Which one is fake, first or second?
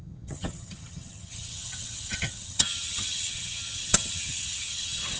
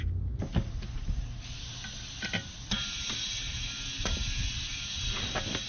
first